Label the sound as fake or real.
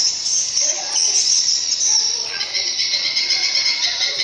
fake